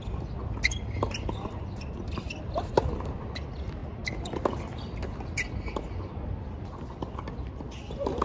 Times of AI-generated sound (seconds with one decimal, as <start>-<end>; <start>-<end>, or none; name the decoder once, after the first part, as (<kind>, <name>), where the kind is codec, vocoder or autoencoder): none